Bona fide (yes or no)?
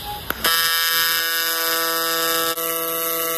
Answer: yes